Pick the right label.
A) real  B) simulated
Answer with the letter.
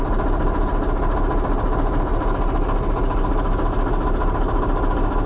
A